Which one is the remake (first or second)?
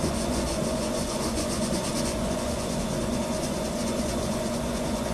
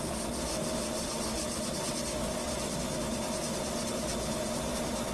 first